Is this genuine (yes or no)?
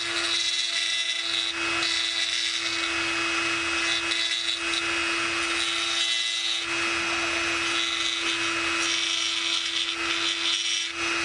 yes